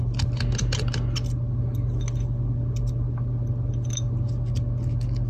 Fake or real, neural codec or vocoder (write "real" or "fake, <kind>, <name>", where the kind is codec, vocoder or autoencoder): real